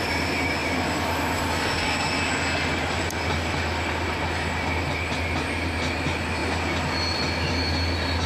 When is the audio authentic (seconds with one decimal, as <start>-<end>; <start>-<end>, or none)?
0.0-8.3